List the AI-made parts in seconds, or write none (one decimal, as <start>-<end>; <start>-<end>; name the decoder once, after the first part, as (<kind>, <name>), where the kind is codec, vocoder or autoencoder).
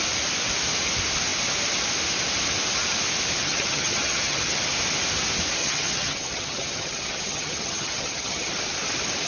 3.4-4.6 (vocoder, HiFi-GAN); 5.6-8.5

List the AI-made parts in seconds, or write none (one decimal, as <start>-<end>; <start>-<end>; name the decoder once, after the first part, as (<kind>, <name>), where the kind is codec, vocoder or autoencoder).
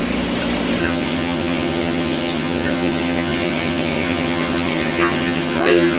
0.8-6.0 (vocoder, HiFi-GAN)